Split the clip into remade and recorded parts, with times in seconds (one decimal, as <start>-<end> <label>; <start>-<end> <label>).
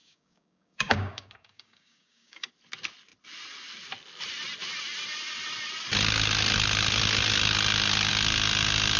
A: 0.0-2.5 remade; 2.5-9.0 recorded